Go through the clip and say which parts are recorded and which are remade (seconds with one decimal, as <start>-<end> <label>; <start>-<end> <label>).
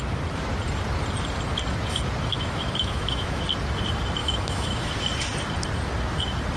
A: 0.0-2.3 recorded; 2.3-3.4 remade; 3.4-4.2 recorded; 4.2-4.9 remade; 4.9-6.6 recorded